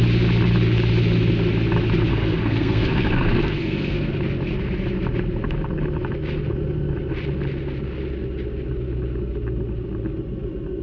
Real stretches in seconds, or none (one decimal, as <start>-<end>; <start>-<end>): 0.0-2.1; 4.1-10.8

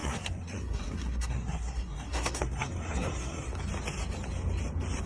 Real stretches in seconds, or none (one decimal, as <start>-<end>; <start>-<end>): 3.5-5.1

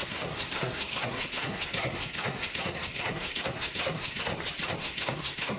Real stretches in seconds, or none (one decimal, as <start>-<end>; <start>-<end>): 4.3-4.8

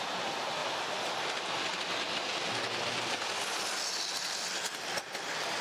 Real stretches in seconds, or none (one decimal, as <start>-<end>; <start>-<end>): 0.0-5.6

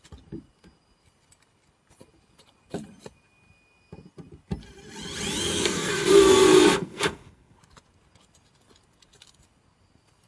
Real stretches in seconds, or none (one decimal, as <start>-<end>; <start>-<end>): 0.0-5.5; 7.6-10.3

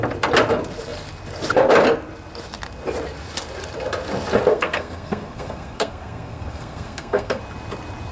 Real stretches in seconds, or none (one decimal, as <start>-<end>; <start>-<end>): 0.0-4.5; 7.4-8.1

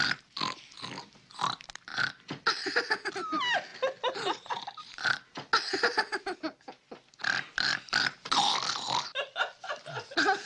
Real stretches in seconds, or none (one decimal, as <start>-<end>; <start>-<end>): 0.0-10.5